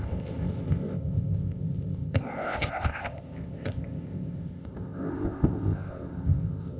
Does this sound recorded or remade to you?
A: remade